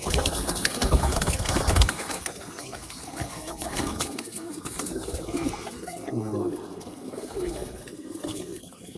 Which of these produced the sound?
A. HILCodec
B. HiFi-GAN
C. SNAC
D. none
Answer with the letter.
C